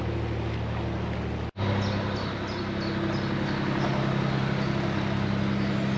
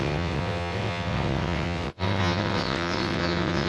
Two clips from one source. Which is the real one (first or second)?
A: first